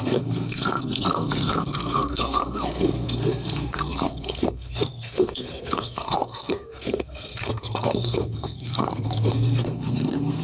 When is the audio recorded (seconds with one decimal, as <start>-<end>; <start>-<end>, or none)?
none